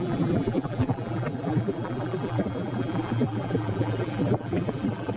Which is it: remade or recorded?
remade